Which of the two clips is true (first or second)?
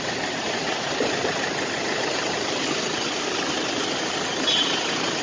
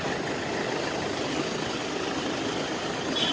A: second